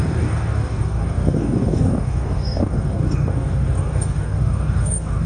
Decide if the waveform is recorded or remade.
remade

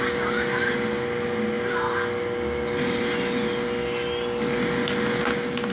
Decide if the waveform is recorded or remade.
recorded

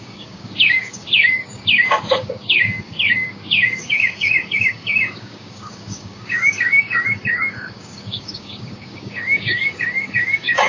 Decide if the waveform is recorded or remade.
remade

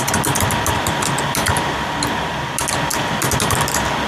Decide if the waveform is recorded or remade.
recorded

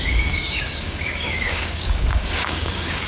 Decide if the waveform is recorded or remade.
remade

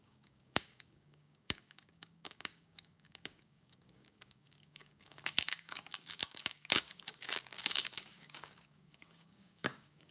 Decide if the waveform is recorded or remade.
remade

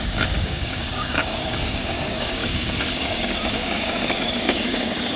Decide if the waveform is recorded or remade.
remade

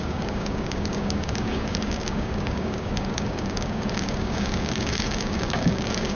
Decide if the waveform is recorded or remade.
remade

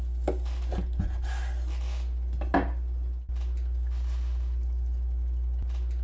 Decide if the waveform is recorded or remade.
recorded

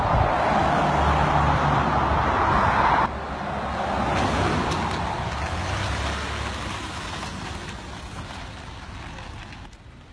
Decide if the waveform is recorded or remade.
recorded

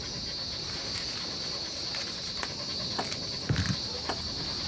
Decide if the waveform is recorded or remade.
recorded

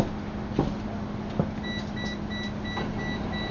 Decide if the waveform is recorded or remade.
recorded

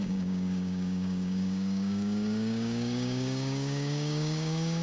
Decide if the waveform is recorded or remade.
remade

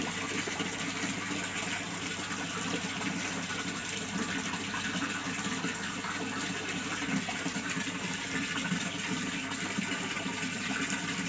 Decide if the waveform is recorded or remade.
recorded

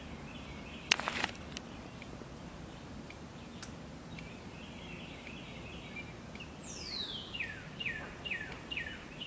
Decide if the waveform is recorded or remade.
recorded